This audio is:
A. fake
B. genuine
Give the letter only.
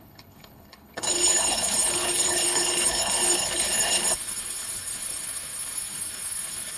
A